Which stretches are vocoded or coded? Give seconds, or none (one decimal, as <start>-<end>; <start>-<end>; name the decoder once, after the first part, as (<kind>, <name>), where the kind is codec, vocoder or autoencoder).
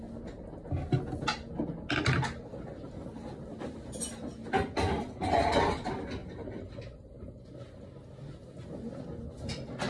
none